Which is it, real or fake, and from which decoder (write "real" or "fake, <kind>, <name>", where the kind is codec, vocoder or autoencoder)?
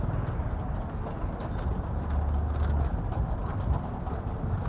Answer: real